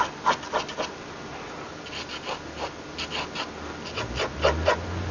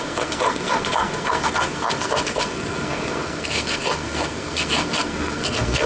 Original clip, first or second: first